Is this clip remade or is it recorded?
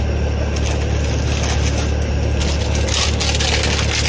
recorded